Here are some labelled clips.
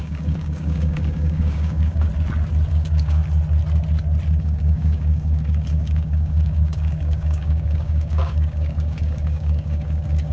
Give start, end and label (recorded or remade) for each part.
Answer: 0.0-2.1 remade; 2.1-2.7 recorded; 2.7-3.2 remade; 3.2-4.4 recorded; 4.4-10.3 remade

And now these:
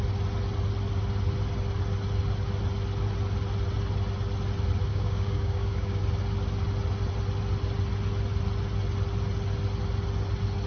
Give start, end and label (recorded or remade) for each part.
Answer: 0.0-4.9 recorded; 4.9-6.0 remade; 6.0-10.7 recorded

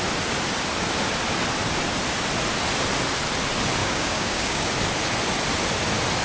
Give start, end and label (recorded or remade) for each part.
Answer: 0.0-3.8 recorded; 3.8-4.7 remade; 4.7-6.2 recorded

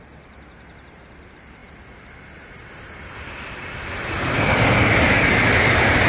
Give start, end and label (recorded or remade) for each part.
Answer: 0.0-6.1 recorded

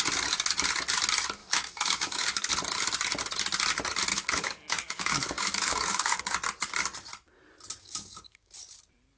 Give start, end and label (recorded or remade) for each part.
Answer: 0.0-1.4 recorded; 1.4-2.5 remade; 2.5-4.1 recorded; 4.1-6.2 remade; 6.2-7.8 recorded; 7.8-8.5 remade; 8.5-9.2 recorded